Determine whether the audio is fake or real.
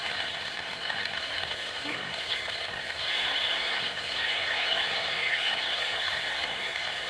fake